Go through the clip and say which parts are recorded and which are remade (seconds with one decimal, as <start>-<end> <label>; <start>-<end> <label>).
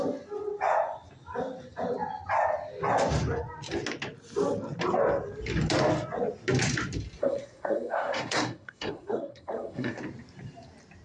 0.0-7.2 recorded; 7.2-10.0 remade; 10.0-11.0 recorded